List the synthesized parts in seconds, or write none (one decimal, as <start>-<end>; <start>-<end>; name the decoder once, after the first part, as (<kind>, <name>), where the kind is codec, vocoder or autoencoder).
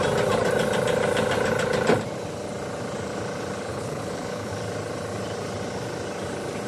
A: 3.7-4.5 (codec, HILCodec)